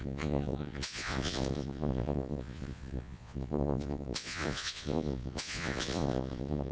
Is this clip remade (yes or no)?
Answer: yes